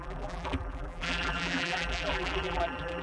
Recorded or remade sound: remade